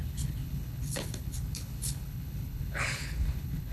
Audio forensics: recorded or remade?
remade